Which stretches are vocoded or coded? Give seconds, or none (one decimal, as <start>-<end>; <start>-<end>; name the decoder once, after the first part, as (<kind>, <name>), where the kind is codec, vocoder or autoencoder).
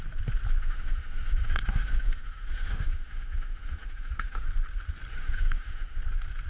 0.6-4.5 (autoencoder, DAC-VAE); 5.1-6.0